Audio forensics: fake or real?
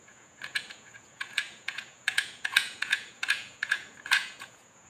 fake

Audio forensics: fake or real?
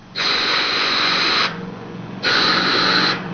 fake